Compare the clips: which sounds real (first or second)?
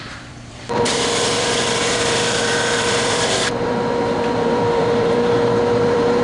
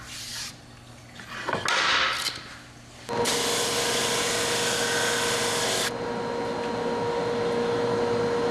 second